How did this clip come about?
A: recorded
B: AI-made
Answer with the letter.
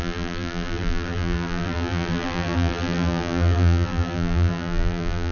B